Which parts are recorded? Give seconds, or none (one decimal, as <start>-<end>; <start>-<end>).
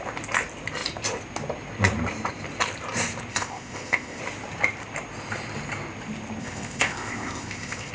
0.0-3.3; 4.2-6.4